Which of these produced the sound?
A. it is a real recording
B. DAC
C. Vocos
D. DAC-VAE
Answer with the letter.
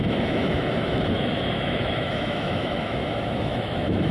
D